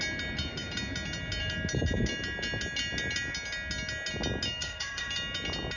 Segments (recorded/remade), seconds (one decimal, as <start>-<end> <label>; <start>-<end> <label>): 0.0-4.6 recorded; 4.6-5.1 remade; 5.1-5.8 recorded